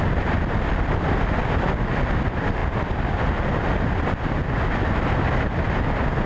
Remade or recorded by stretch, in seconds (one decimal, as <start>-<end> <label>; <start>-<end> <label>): 0.0-6.3 recorded

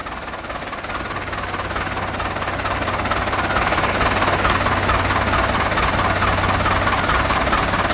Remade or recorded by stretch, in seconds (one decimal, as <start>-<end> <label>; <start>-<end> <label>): 0.0-7.9 recorded